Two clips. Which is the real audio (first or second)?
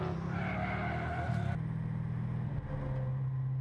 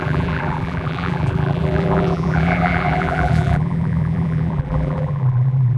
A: first